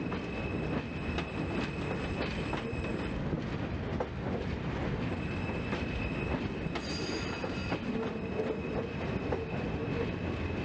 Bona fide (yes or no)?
yes